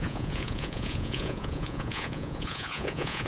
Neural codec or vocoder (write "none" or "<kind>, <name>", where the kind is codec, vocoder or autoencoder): vocoder, Vocos